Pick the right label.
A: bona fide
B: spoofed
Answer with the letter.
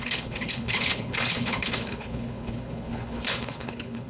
B